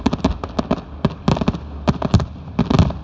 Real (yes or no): yes